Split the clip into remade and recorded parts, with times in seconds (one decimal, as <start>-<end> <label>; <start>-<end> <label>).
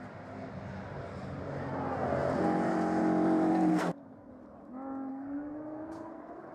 0.0-3.7 recorded; 3.7-4.3 remade; 4.3-5.1 recorded; 5.1-6.5 remade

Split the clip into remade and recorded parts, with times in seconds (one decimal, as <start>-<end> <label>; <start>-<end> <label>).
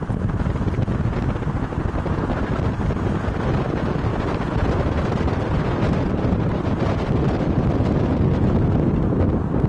0.0-4.1 recorded; 4.1-8.4 remade; 8.4-9.7 recorded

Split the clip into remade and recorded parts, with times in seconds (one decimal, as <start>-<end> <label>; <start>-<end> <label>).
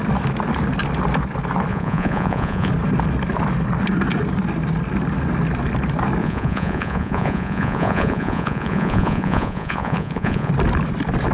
0.0-1.7 recorded; 1.7-2.7 remade; 2.7-6.2 recorded; 6.2-10.5 remade; 10.5-11.3 recorded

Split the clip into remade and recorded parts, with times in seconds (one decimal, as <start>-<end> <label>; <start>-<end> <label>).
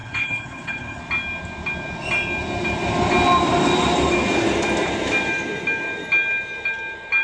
0.0-1.0 remade; 1.0-7.2 recorded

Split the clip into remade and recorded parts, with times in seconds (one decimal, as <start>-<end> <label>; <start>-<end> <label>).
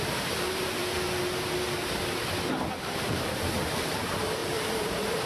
0.0-0.8 remade; 0.8-2.8 recorded; 2.8-5.3 remade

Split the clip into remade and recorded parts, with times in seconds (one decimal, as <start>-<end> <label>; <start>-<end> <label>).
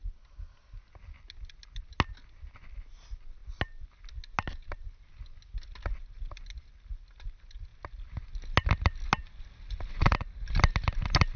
0.0-11.4 recorded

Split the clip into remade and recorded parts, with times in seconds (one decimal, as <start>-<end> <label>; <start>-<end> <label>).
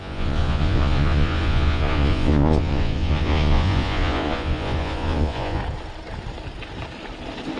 0.0-5.6 remade; 5.6-7.6 recorded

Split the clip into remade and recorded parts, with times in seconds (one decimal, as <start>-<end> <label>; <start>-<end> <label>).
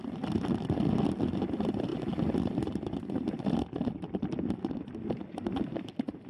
0.0-6.3 recorded